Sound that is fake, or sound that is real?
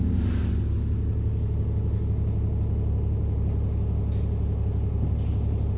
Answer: real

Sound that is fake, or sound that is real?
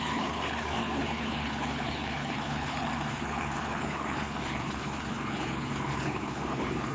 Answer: fake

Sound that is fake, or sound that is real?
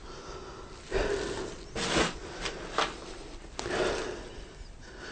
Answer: real